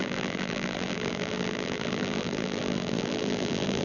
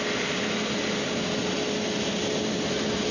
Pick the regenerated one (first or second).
first